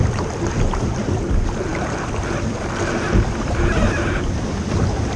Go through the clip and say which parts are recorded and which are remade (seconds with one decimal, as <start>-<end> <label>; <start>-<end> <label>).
0.0-1.0 remade; 1.0-1.7 recorded; 1.7-4.8 remade; 4.8-5.2 recorded